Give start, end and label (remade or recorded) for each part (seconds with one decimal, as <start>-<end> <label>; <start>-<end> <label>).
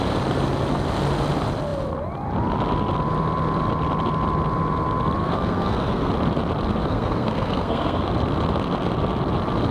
0.0-5.2 recorded; 5.2-6.1 remade; 6.1-6.8 recorded; 6.8-8.1 remade; 8.1-9.7 recorded